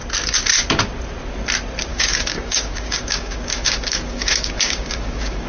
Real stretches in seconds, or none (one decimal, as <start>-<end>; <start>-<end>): 0.0-1.9